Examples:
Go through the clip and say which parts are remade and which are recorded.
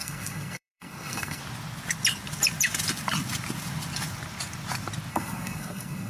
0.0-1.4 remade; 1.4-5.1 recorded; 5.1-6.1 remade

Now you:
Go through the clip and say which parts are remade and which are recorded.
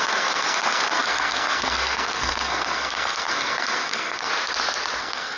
0.0-4.3 remade; 4.3-5.0 recorded; 5.0-5.4 remade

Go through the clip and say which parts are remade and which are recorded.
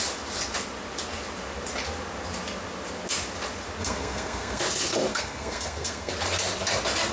0.0-3.8 recorded; 3.8-4.6 remade; 4.6-5.1 recorded; 5.1-6.1 remade; 6.1-7.1 recorded